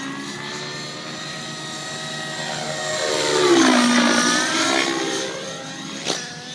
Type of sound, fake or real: real